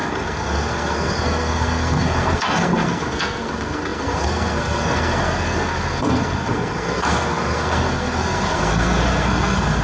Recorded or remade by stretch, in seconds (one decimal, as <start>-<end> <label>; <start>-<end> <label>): 0.0-9.8 remade